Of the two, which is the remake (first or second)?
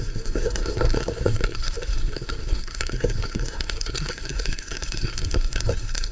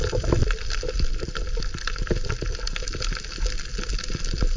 first